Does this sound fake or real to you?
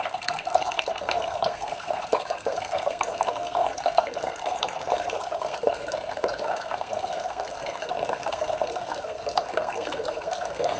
fake